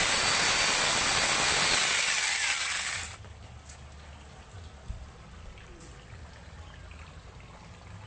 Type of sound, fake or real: real